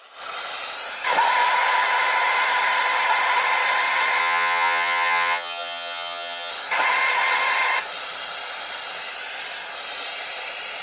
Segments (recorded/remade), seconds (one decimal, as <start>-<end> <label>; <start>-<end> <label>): 0.0-4.2 recorded; 4.2-6.5 remade; 6.5-10.8 recorded